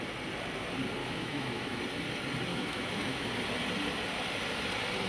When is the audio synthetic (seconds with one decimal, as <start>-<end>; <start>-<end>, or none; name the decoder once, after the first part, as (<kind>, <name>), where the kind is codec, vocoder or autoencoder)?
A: 1.0-1.8 (autoencoder, DAC-VAE); 2.5-3.3